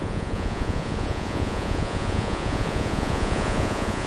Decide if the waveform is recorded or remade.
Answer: remade